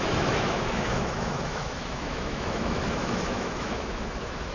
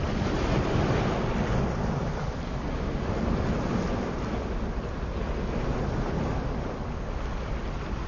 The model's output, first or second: first